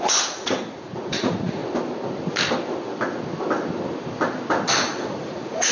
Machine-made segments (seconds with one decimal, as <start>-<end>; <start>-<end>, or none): 0.0-1.6; 5.0-5.7